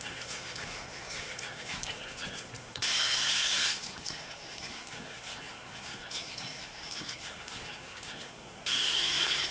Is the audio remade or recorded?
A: remade